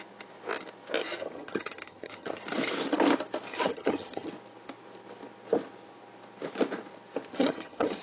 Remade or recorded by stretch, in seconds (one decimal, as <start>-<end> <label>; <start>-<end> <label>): 0.0-1.0 recorded; 1.0-2.4 remade; 2.4-3.5 recorded; 3.5-4.3 remade; 4.3-7.3 recorded; 7.3-8.0 remade